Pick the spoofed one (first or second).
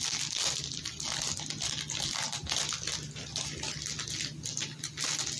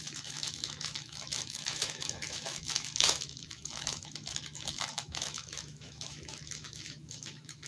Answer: second